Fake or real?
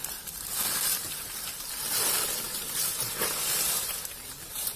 fake